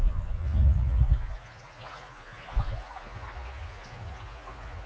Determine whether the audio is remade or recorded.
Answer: remade